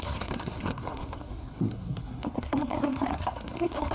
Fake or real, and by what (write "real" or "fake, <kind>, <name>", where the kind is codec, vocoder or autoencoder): fake, codec, SNAC